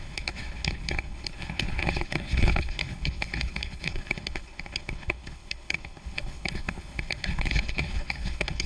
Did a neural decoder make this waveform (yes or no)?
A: yes